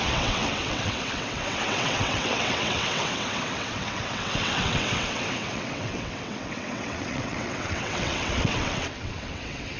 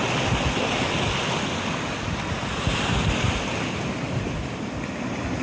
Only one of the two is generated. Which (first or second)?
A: first